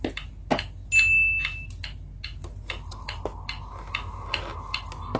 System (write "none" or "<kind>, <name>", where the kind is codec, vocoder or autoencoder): none